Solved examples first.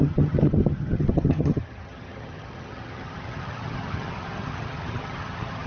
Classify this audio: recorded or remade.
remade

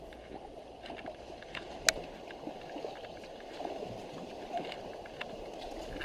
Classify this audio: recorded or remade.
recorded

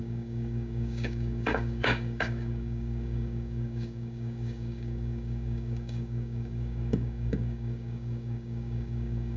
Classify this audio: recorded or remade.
remade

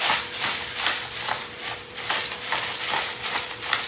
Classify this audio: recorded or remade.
remade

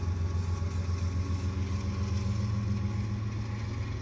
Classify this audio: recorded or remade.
recorded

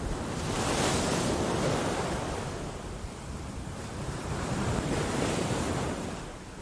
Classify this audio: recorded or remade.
recorded